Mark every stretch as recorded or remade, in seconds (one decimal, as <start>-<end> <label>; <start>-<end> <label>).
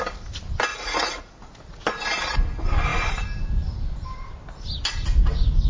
0.0-0.7 recorded; 0.7-1.3 remade; 1.3-5.7 recorded